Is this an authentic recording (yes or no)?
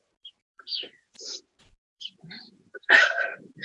no